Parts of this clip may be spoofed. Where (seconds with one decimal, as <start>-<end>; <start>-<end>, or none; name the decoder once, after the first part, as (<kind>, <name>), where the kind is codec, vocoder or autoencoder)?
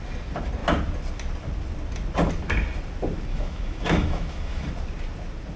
3.3-4.7 (autoencoder, DAC-VAE)